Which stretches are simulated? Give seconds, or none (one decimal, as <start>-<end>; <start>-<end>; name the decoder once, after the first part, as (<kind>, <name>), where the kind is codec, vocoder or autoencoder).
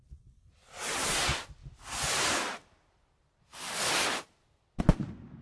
none